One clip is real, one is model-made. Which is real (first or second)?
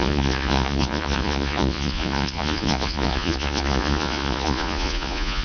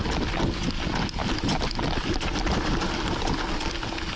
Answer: second